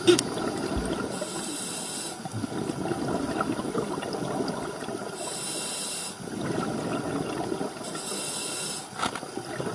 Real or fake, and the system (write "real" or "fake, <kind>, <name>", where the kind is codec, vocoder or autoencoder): real